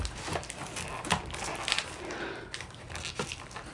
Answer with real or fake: real